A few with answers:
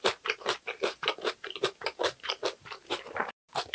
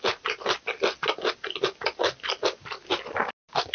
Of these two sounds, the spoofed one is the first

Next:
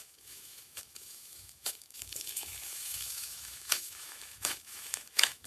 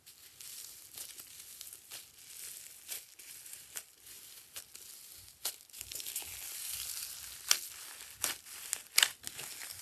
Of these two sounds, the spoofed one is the first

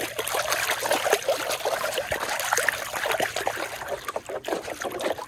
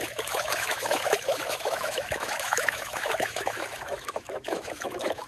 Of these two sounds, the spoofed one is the second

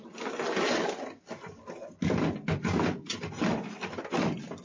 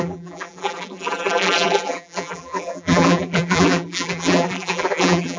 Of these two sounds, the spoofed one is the second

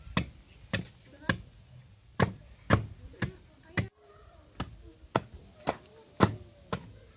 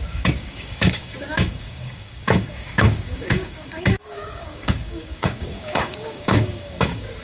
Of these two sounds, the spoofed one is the second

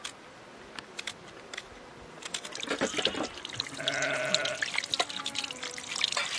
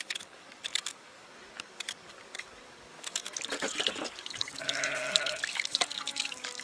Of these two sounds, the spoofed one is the second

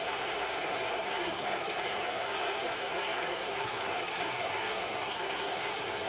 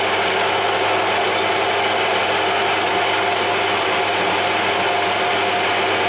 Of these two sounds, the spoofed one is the first